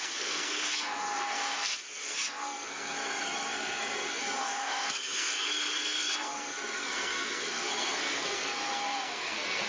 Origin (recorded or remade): remade